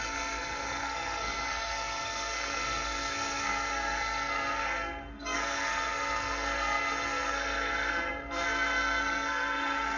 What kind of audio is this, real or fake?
fake